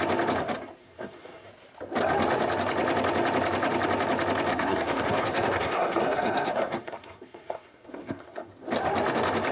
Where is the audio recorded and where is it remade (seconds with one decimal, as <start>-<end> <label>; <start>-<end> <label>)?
0.0-0.8 recorded; 0.8-1.5 remade; 1.5-4.5 recorded; 4.5-8.5 remade; 8.5-9.5 recorded